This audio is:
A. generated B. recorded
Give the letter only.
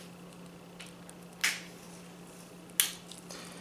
B